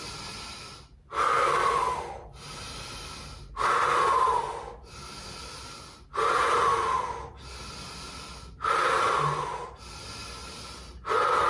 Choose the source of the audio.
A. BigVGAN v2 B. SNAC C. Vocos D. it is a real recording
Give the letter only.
D